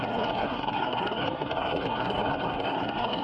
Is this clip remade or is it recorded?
remade